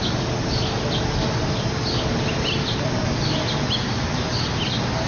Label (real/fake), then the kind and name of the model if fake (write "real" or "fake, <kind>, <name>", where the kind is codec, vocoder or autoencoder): real